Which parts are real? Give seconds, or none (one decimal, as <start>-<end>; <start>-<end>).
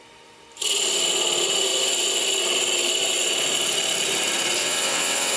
0.0-4.6